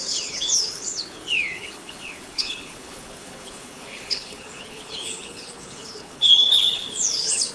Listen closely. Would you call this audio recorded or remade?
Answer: remade